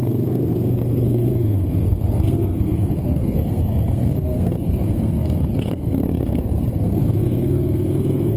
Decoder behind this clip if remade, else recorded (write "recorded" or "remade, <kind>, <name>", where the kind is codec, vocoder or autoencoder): remade, codec, SNAC